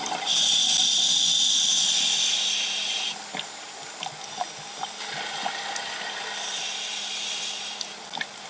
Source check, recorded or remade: recorded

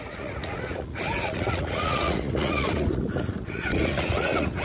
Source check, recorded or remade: remade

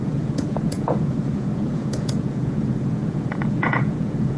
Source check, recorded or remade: remade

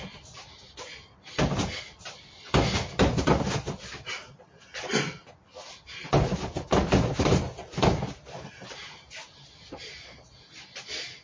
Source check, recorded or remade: recorded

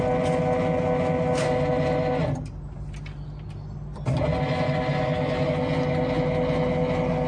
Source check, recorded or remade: recorded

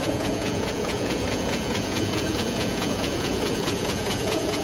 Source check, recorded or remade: remade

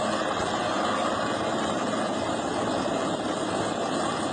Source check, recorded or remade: recorded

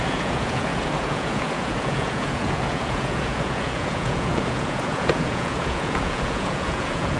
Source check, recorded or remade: remade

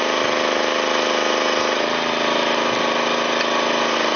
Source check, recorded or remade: recorded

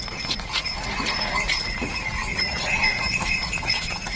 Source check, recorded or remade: remade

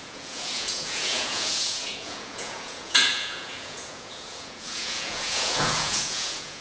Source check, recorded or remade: remade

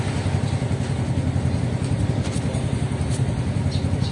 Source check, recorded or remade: recorded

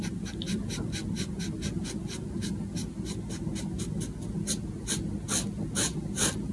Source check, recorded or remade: recorded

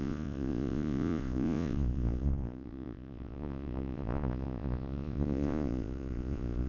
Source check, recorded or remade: remade